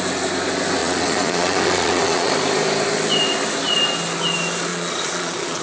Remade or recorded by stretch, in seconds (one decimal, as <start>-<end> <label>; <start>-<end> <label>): 0.0-0.8 recorded; 0.8-2.3 remade; 2.3-4.7 recorded; 4.7-5.6 remade